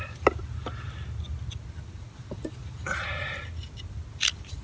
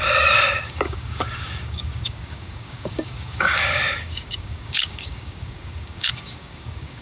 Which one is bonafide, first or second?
first